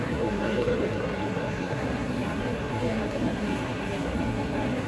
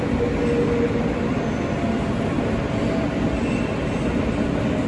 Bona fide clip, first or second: second